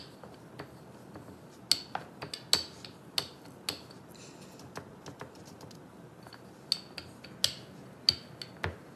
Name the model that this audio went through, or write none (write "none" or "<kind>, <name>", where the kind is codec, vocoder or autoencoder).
none